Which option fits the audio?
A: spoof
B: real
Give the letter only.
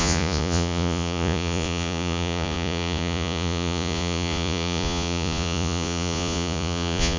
A